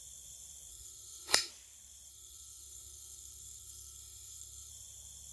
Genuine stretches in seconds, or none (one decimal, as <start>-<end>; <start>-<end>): 0.0-0.7; 1.5-2.1; 4.7-5.3